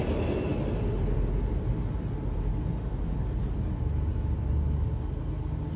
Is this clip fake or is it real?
real